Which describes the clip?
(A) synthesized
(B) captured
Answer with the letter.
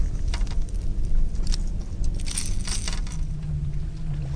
B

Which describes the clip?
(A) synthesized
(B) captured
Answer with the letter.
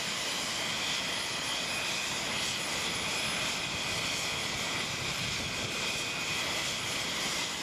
B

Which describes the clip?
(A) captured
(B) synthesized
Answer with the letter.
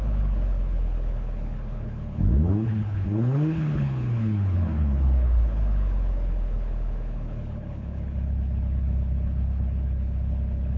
B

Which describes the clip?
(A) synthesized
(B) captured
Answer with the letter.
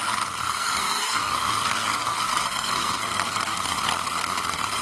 A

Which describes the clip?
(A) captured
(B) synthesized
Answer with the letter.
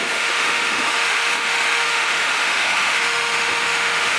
B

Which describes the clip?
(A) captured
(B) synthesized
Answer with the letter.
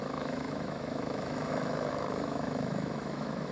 B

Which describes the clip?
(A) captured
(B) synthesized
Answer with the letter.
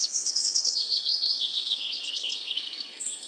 B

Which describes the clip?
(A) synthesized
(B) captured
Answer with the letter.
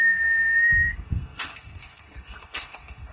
A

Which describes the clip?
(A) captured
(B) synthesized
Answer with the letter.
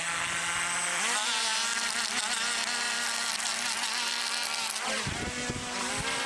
A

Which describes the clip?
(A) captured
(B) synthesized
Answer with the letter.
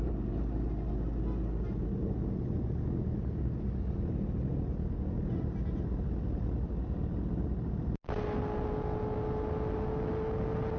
A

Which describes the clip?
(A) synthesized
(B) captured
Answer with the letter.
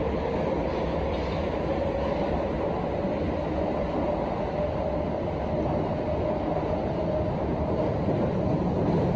B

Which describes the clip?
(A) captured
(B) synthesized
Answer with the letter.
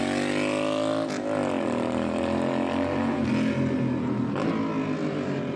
A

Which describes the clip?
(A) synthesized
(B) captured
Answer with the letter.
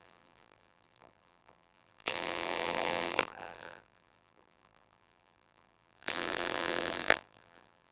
A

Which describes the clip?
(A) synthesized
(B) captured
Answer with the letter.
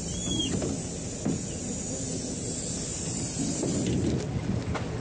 B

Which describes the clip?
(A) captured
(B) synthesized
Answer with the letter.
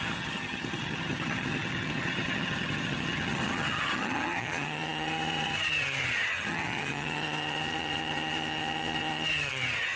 B